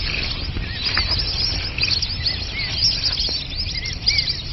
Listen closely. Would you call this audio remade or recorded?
recorded